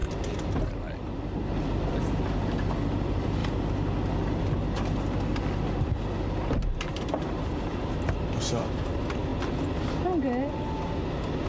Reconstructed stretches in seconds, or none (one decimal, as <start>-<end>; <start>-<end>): 6.9-7.7